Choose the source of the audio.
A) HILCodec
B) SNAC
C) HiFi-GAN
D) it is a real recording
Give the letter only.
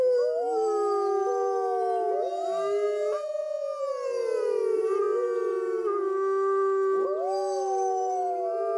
D